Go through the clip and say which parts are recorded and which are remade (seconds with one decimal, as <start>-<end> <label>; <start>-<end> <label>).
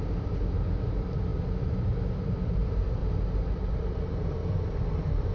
0.0-5.3 recorded